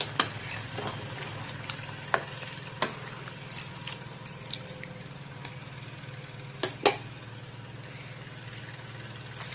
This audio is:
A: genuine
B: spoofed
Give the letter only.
A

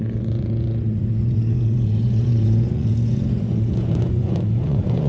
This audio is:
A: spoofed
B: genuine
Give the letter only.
A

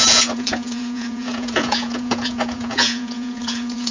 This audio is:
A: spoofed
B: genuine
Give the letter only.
A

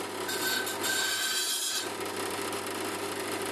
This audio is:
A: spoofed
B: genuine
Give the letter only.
B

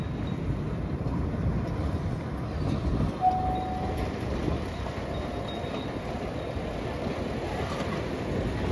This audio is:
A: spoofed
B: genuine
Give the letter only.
B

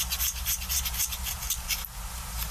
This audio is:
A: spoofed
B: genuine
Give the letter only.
B